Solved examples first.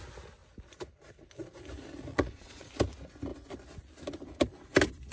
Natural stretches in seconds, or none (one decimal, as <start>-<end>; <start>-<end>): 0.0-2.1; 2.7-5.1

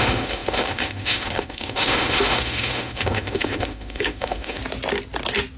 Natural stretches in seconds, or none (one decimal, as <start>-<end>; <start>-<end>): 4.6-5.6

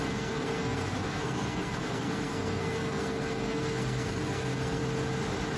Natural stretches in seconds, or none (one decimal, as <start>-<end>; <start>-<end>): 4.8-5.6

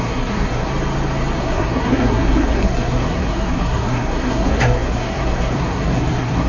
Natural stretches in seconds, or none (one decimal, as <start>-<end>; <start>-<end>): 0.7-1.4

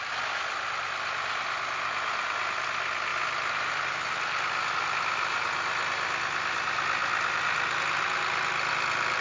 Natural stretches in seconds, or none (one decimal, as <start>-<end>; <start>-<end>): 0.0-9.2

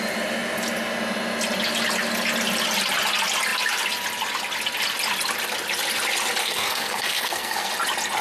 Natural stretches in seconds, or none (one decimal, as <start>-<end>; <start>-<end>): 0.0-6.4; 7.7-8.2

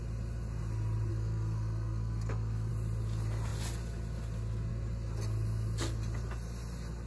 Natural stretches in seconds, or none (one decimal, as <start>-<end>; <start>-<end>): 0.0-1.1; 2.7-7.1

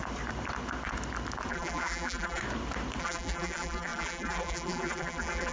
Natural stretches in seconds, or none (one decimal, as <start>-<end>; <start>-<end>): 0.0-1.5; 2.4-3.0